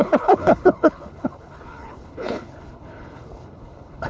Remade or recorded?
remade